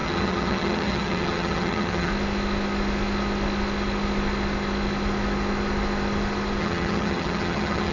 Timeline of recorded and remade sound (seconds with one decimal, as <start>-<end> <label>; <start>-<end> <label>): 0.0-2.1 remade; 2.1-6.6 recorded; 6.6-7.9 remade